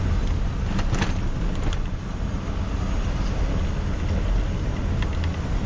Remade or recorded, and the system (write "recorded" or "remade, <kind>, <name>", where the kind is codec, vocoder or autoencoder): recorded